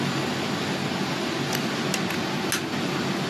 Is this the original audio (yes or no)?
yes